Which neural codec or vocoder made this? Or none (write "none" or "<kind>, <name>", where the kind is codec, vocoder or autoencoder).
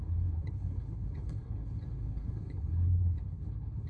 codec, HILCodec